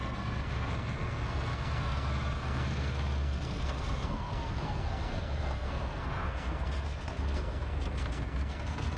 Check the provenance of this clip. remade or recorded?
remade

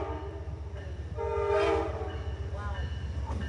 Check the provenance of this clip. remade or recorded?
recorded